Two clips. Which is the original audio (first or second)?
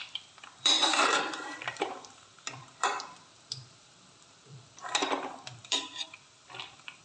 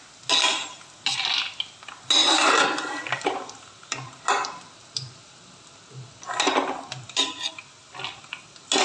second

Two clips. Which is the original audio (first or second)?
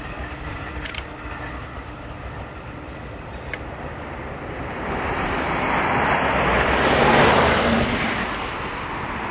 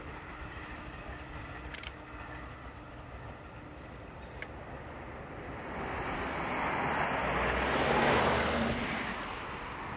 second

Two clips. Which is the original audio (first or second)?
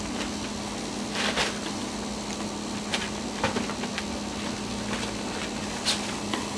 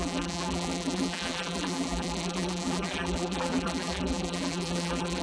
first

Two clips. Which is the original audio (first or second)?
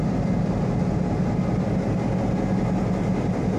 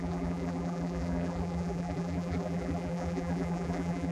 first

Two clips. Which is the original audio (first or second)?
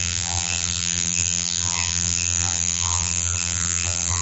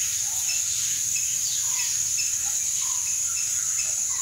second